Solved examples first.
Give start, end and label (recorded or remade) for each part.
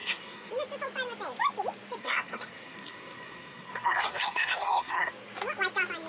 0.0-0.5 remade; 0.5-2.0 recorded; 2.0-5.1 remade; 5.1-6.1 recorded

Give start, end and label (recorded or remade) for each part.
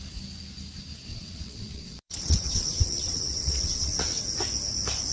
0.0-1.1 recorded; 1.1-4.2 remade; 4.2-5.1 recorded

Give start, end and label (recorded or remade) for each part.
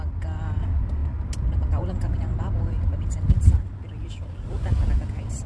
0.0-5.5 recorded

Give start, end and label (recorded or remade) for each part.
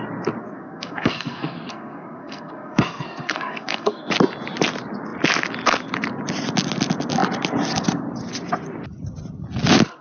0.0-0.4 recorded; 0.4-4.1 remade; 4.1-10.0 recorded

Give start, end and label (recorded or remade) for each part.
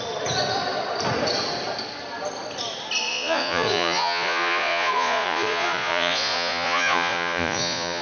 0.0-3.1 recorded; 3.1-8.0 remade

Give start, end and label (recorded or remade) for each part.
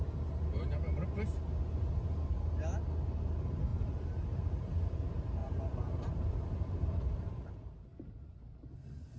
0.0-3.7 recorded; 3.7-5.0 remade; 5.0-5.4 recorded; 5.4-7.5 remade; 7.5-9.2 recorded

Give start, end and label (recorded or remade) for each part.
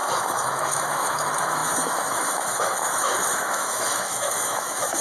0.0-5.0 remade